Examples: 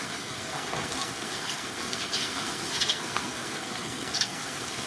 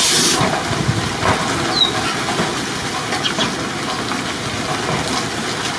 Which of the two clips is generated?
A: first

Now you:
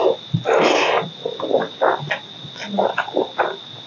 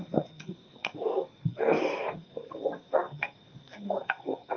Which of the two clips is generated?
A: second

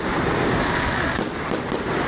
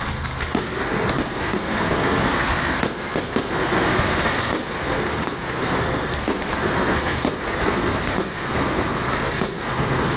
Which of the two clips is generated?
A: second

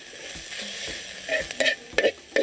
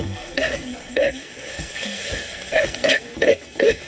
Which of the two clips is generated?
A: second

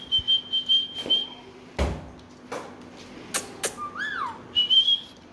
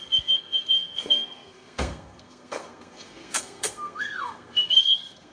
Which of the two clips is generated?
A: second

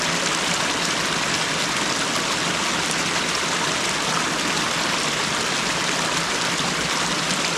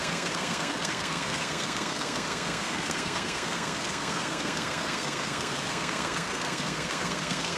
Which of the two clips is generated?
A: second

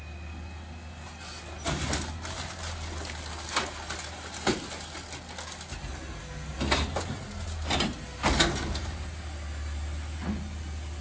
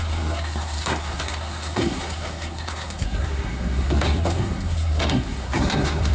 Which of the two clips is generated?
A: second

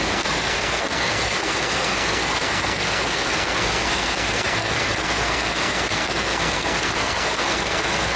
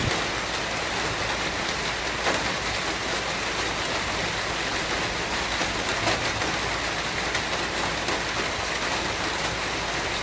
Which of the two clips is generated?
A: first